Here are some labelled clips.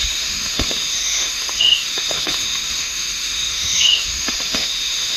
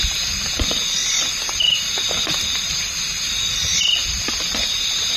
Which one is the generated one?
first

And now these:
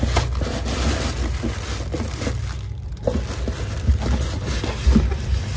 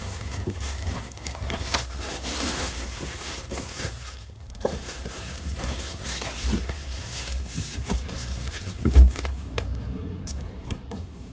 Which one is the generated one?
second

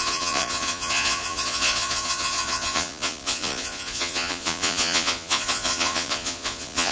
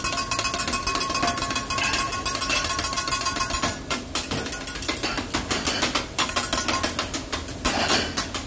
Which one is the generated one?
first